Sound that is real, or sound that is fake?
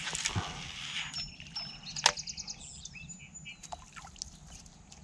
real